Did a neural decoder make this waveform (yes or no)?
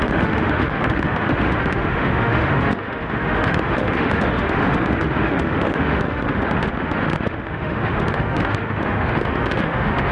yes